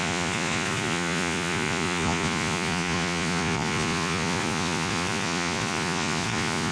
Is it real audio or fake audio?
fake